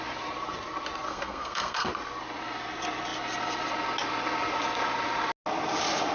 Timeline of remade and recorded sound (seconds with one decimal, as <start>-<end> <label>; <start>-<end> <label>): 0.0-1.1 recorded; 1.1-1.9 remade; 1.9-6.1 recorded